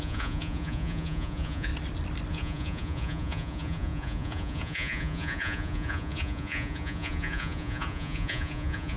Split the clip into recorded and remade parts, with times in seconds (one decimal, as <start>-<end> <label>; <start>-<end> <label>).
0.0-1.7 remade; 1.7-2.3 recorded; 2.3-9.0 remade